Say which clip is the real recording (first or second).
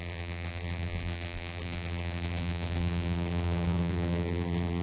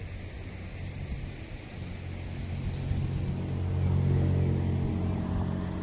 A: second